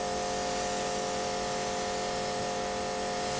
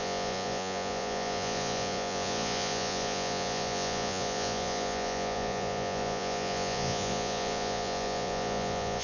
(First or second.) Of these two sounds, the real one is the first